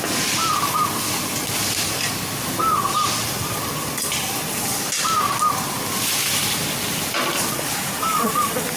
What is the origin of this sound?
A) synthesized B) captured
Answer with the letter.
B